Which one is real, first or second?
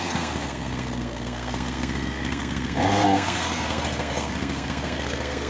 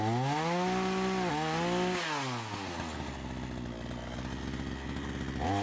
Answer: second